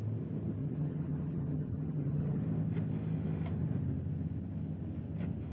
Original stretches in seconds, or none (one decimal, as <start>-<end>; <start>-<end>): 0.0-0.6; 2.4-5.5